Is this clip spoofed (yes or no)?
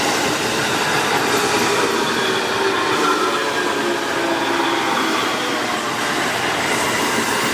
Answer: no